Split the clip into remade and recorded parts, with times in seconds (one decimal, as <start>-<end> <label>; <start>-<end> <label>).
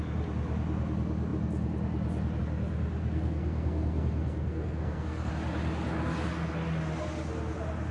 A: 0.0-3.0 recorded; 3.0-5.3 remade; 5.3-7.9 recorded